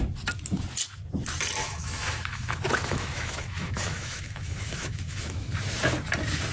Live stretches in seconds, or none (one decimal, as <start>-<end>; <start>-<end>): 0.0-1.6; 5.5-6.5